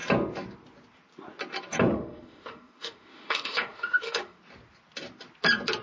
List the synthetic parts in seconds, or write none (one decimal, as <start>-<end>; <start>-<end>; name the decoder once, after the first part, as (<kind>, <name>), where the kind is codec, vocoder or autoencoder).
1.9-4.4 (autoencoder, DAC-VAE)